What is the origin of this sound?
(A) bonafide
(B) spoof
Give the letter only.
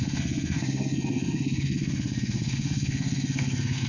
B